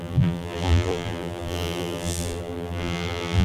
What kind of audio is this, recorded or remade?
remade